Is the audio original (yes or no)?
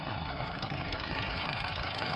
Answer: no